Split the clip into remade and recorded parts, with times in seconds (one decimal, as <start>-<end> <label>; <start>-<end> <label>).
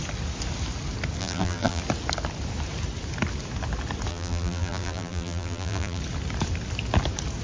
0.0-1.2 recorded; 1.2-1.8 remade; 1.8-4.1 recorded; 4.1-6.0 remade; 6.0-7.4 recorded